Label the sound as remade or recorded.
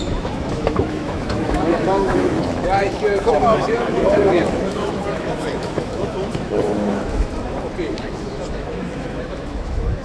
remade